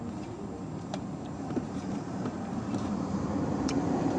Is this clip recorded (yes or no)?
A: no